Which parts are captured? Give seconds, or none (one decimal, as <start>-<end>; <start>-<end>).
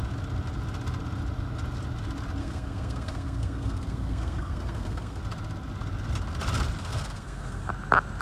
0.0-2.4; 5.2-6.8; 7.7-8.2